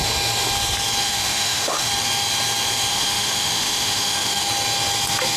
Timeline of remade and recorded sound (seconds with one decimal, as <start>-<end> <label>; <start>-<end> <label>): 0.0-1.0 recorded; 1.0-1.9 remade; 1.9-2.9 recorded; 2.9-4.5 remade; 4.5-5.4 recorded